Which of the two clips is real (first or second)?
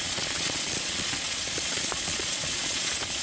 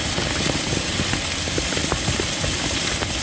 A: second